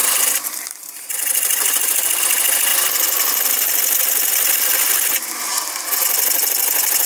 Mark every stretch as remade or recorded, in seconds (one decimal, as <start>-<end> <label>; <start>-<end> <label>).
0.0-2.2 remade; 2.2-7.1 recorded